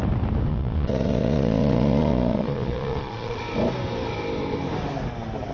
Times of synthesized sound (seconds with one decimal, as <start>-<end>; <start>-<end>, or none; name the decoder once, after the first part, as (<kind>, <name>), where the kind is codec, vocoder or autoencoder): 0.5-3.4 (vocoder, Vocos)

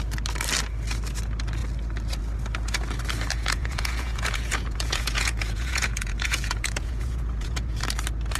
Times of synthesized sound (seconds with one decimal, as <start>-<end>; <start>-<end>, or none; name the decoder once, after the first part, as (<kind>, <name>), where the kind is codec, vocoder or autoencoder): 3.3-7.8 (vocoder, Vocos)